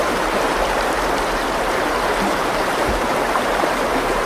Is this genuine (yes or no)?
no